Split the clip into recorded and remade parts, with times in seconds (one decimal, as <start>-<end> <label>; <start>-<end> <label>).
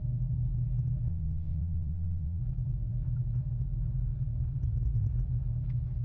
0.0-1.1 recorded; 1.1-2.4 remade; 2.4-6.0 recorded